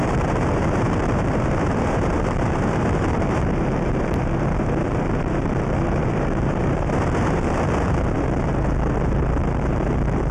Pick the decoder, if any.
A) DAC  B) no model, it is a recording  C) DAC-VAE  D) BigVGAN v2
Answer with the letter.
D